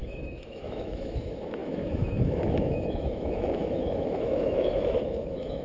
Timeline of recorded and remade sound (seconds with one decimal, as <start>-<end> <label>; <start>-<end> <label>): 0.0-5.6 remade